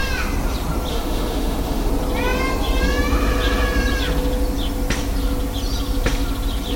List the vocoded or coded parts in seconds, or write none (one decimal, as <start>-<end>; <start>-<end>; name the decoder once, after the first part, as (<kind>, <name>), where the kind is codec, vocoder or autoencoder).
0.9-1.9 (autoencoder, DAC-VAE)